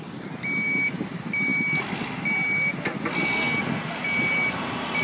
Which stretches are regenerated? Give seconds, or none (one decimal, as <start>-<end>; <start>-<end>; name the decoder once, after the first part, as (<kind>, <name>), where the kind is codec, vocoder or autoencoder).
none